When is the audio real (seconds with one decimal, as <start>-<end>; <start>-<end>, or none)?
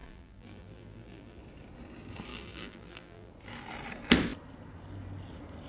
1.4-2.3; 3.3-5.7